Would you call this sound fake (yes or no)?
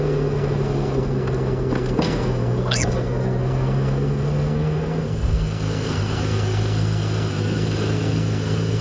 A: yes